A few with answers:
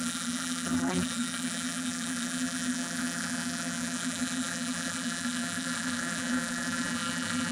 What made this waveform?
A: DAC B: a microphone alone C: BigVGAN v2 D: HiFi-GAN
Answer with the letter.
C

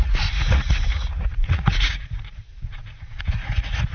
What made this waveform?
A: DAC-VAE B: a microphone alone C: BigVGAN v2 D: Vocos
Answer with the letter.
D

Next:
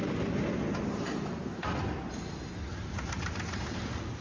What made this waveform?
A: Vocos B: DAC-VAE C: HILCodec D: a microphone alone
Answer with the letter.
D